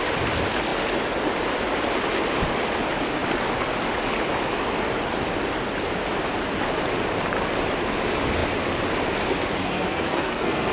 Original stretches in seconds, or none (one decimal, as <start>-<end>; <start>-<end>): 0.0-9.6